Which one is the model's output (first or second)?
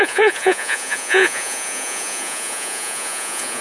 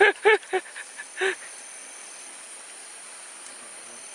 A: first